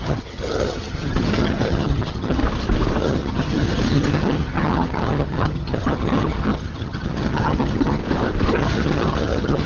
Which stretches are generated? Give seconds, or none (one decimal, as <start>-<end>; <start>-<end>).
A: 0.0-2.4; 3.0-8.0; 8.5-9.7